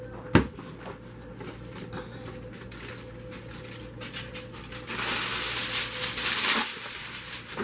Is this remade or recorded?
recorded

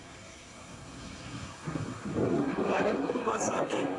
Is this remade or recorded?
remade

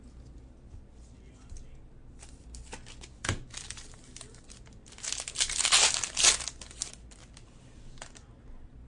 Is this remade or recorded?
recorded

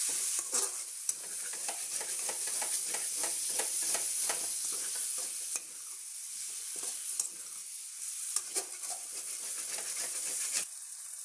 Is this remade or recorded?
remade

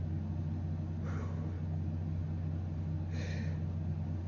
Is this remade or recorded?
recorded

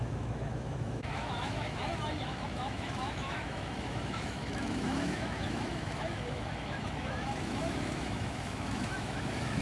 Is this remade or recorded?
remade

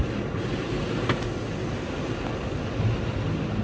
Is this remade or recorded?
recorded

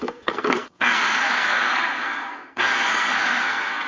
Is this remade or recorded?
remade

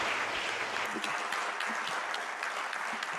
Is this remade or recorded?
recorded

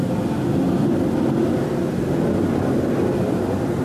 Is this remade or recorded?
recorded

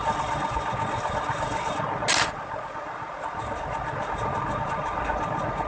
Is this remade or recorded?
recorded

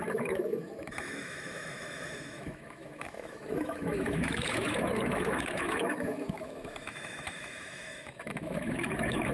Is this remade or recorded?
remade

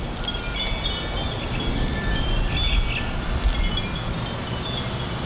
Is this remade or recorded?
recorded